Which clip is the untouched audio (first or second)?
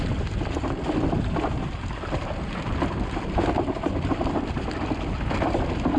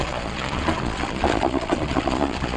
first